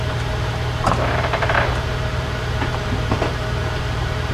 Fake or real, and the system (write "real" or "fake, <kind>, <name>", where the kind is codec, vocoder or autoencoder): fake, vocoder, BigVGAN v2